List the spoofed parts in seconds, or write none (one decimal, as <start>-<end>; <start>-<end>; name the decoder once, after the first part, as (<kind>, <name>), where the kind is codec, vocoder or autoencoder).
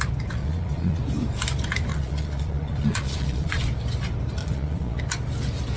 0.4-1.0 (vocoder, Vocos); 1.9-3.6; 4.4-5.0